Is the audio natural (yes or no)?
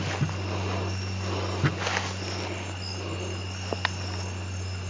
yes